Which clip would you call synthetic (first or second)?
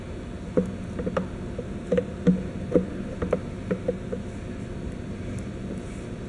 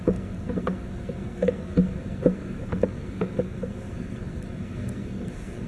second